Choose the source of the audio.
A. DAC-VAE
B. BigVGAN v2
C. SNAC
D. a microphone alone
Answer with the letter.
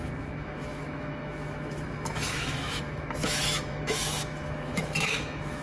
A